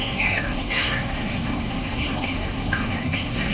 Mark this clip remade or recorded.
remade